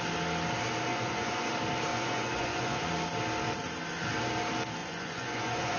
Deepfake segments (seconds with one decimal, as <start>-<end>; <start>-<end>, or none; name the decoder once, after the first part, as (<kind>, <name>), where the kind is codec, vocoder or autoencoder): 0.9-1.5 (vocoder, Vocos); 1.9-2.9; 4.8-5.8